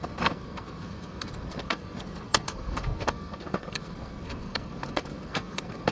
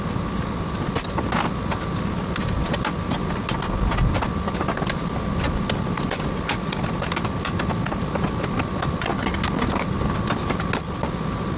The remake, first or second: first